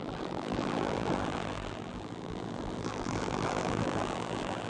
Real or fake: fake